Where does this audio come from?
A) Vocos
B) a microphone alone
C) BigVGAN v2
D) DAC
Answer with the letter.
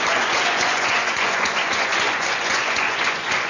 A